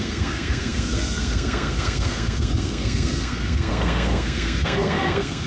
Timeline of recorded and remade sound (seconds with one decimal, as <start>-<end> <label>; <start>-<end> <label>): 0.0-5.5 remade